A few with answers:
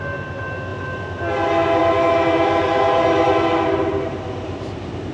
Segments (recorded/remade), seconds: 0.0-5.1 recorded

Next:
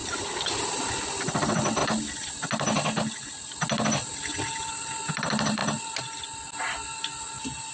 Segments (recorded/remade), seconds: 0.0-1.8 remade; 1.8-4.7 recorded; 4.7-5.6 remade; 5.6-6.6 recorded; 6.6-7.7 remade

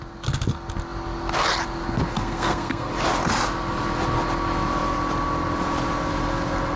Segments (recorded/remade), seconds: 0.0-2.1 recorded; 2.1-2.9 remade; 2.9-6.8 recorded

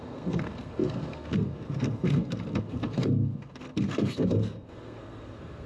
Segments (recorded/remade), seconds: 0.0-5.7 remade

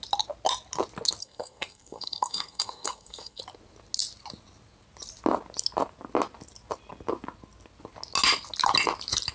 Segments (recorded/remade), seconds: 0.0-1.2 recorded; 1.2-3.4 remade; 3.4-9.3 recorded

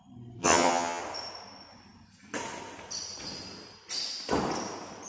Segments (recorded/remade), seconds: 0.0-0.4 recorded; 0.4-1.0 remade; 1.0-5.1 recorded

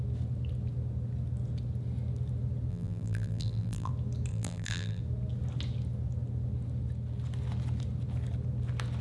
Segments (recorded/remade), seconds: 0.0-2.7 recorded; 2.7-3.9 remade; 3.9-4.3 recorded; 4.3-5.0 remade; 5.0-9.0 recorded

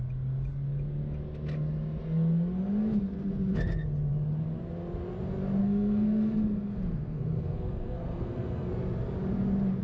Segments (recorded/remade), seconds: 0.0-5.6 recorded; 5.6-8.7 remade; 8.7-9.8 recorded